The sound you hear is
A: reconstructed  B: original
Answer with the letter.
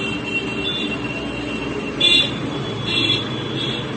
B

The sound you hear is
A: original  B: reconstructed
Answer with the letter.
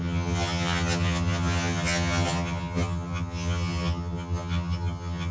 B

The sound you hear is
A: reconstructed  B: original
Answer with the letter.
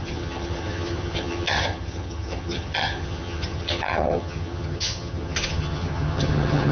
A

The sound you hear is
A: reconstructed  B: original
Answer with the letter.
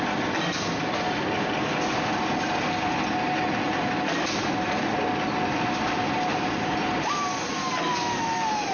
B